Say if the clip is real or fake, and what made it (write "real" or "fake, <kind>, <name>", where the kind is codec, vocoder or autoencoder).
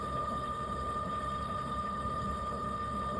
fake, codec, HILCodec